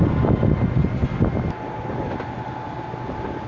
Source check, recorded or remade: recorded